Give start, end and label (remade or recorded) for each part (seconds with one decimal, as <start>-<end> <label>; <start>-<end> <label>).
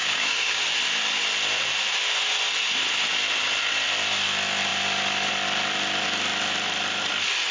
0.0-0.6 remade; 0.6-7.5 recorded